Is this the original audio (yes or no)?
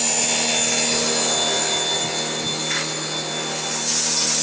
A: yes